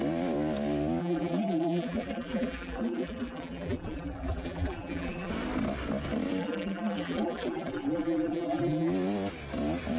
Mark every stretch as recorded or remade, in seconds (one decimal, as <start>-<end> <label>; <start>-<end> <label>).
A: 0.0-1.0 recorded; 1.0-5.3 remade; 5.3-6.4 recorded; 6.4-8.9 remade; 8.9-10.0 recorded